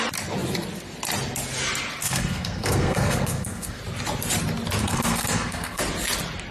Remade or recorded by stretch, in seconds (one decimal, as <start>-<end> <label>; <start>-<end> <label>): 0.0-2.0 recorded; 2.0-3.8 remade; 3.8-4.8 recorded; 4.8-5.8 remade; 5.8-6.5 recorded